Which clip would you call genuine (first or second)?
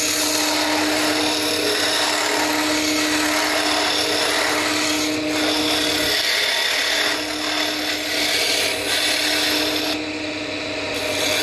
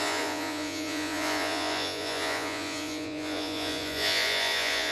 first